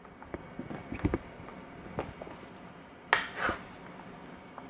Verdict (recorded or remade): recorded